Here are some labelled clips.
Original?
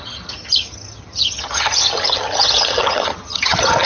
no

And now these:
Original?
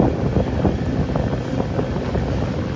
yes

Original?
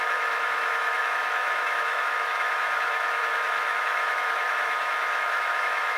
no